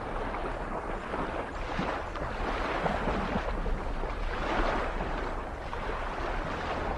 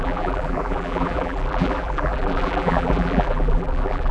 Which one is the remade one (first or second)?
second